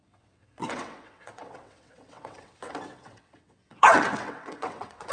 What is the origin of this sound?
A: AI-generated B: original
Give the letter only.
A